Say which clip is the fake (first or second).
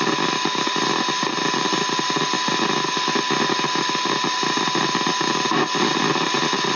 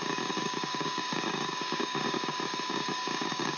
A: second